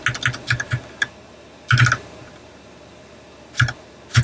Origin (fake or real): real